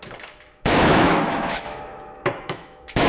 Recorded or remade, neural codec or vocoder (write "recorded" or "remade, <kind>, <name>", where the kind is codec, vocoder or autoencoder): remade, autoencoder, DAC-VAE